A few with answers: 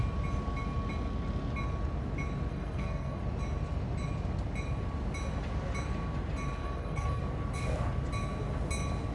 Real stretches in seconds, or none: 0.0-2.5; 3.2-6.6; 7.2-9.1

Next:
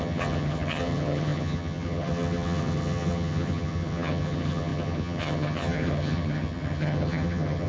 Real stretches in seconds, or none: none

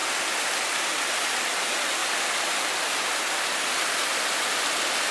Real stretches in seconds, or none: 0.0-5.1

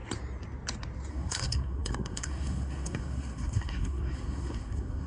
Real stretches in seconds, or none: 0.0-1.1

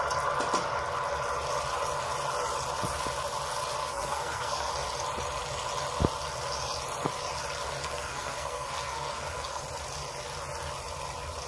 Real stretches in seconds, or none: 0.0-3.8; 4.7-7.8; 9.6-11.5

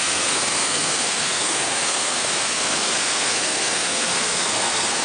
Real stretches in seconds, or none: none